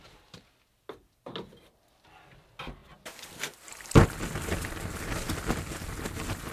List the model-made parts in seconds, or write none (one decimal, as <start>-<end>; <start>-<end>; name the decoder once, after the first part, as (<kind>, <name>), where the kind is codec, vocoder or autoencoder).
none